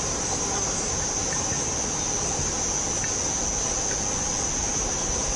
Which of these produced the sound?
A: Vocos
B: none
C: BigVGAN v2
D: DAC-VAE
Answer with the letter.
B